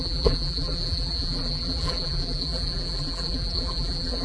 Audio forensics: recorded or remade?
remade